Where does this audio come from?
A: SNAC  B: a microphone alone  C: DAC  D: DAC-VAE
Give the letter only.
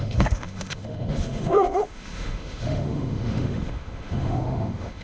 D